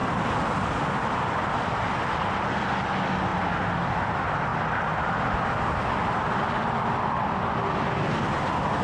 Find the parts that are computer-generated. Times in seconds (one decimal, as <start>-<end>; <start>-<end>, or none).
none